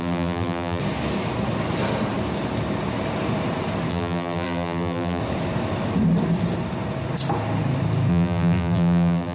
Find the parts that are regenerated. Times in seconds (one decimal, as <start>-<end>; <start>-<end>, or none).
0.0-0.8; 3.9-5.2; 8.1-9.3